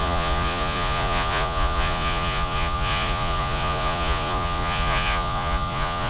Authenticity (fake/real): fake